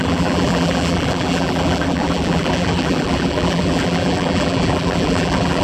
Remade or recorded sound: remade